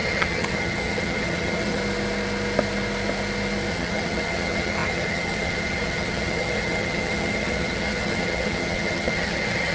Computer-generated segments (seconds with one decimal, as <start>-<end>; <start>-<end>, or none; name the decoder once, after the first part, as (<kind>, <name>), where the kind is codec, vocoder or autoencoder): 0.0-1.8 (vocoder, HiFi-GAN); 3.7-9.7